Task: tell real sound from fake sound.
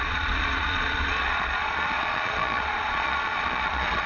fake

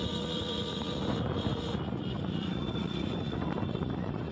fake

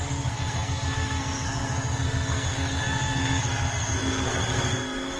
fake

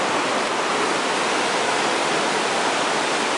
real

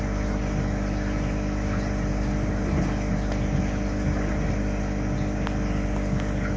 real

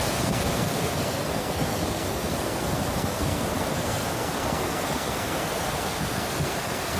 fake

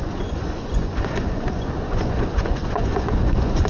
fake